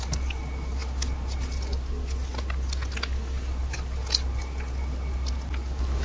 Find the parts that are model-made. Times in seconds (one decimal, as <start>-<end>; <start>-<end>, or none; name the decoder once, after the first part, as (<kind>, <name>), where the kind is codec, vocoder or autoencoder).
none